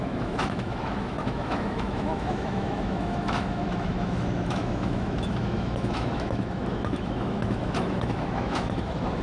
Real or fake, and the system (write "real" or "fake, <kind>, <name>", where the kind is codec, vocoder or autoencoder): fake, autoencoder, DAC-VAE